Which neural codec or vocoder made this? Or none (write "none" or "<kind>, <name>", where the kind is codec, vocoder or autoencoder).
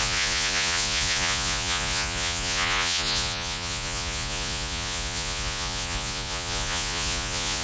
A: vocoder, Vocos